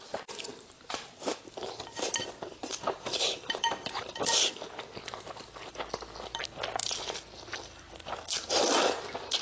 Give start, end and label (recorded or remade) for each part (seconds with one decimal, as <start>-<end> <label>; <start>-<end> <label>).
0.0-0.5 recorded; 0.5-4.5 remade; 4.5-5.0 recorded; 5.0-5.6 remade; 5.6-9.4 recorded